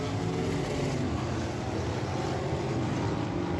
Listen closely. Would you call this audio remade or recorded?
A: recorded